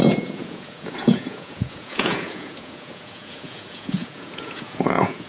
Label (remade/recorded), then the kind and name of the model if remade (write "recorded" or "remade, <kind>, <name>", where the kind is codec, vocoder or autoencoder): remade, vocoder, Vocos